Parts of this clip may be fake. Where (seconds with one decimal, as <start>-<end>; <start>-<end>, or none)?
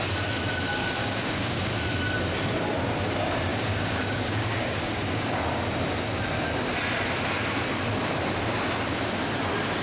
1.0-1.7; 3.5-5.4